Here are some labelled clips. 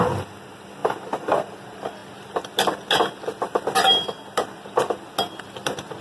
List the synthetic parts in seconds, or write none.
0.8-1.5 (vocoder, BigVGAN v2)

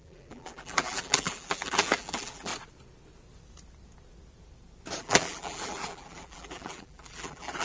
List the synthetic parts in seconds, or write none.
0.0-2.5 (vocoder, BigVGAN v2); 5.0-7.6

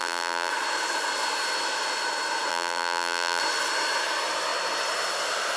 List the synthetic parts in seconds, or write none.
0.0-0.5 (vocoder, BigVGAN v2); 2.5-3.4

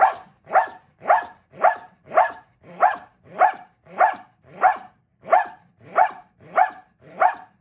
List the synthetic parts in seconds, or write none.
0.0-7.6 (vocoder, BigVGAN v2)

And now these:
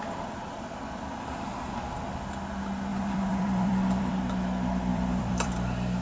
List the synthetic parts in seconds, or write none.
2.9-4.1 (vocoder, BigVGAN v2); 4.9-5.5

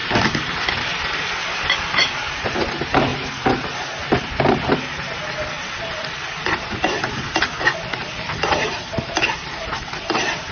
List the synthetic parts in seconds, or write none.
8.0-9.7 (vocoder, BigVGAN v2)

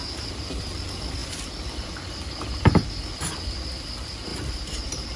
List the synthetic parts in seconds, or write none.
4.3-5.2 (vocoder, BigVGAN v2)

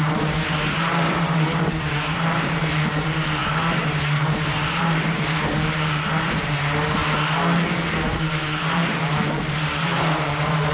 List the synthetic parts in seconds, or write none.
0.0-7.0 (vocoder, BigVGAN v2); 7.7-10.7